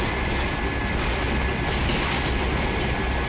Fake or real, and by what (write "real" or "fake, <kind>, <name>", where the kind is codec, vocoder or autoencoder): real